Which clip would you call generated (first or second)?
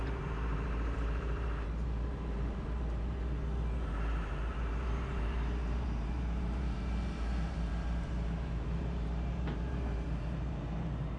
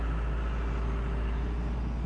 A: first